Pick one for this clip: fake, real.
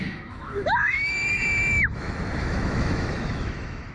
fake